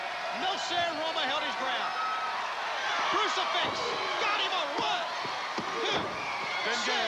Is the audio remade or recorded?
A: recorded